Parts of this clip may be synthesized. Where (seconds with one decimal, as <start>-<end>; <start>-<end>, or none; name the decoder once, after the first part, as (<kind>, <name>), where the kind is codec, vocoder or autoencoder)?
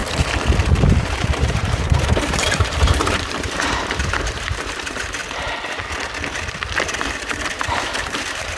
1.0-5.2 (vocoder, BigVGAN v2); 6.8-8.6